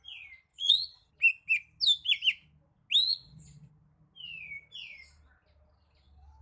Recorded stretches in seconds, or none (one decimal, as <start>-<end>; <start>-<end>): 0.0-0.5; 1.1-3.1; 3.7-6.4